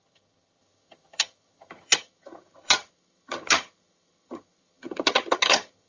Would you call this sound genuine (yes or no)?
no